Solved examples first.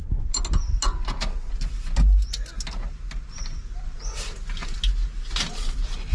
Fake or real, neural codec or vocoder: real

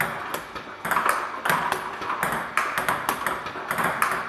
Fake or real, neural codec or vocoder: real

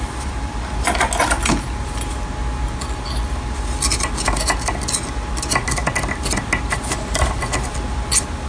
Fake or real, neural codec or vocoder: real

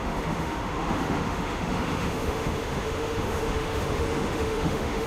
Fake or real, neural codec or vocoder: fake, autoencoder, DAC-VAE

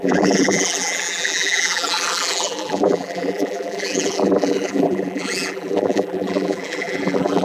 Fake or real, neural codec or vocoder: fake, vocoder, BigVGAN v2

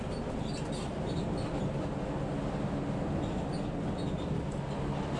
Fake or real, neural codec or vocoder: real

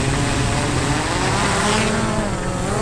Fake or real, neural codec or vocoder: real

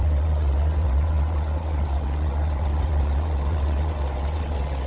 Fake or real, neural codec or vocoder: fake, vocoder, WaveNeXt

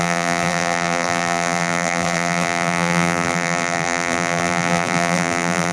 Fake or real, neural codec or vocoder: fake, vocoder, BigVGAN v2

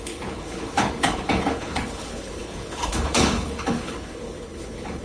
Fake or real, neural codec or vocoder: fake, codec, HILCodec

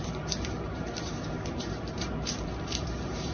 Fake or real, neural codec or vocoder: fake, vocoder, BigVGAN v2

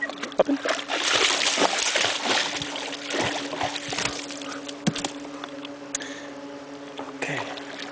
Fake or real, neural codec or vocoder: real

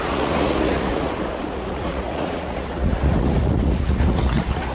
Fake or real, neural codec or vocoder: fake, vocoder, Vocos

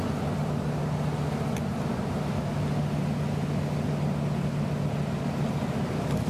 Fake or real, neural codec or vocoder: real